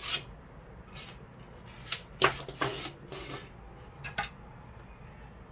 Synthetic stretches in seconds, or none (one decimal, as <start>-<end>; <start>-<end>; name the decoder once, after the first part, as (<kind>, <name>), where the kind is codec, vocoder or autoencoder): none